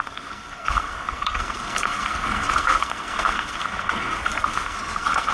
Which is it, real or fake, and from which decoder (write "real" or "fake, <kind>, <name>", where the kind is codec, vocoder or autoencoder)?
fake, codec, SNAC